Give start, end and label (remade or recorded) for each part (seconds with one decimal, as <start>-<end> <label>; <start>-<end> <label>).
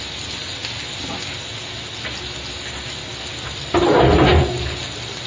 0.0-5.3 recorded